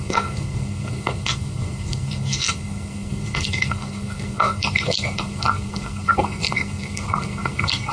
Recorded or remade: remade